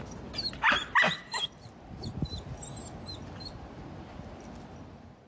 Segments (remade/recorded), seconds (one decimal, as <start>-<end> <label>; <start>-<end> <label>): 0.0-5.3 recorded